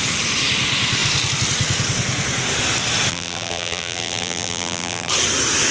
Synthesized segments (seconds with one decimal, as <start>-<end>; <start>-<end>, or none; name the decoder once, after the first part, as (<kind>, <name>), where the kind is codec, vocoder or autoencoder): 3.1-5.1 (vocoder, BigVGAN v2)